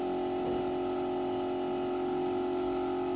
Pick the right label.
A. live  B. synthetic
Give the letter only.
A